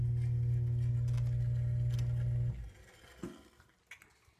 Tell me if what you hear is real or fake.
real